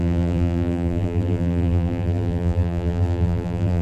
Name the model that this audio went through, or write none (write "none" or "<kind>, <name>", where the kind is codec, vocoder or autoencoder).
vocoder, BigVGAN v2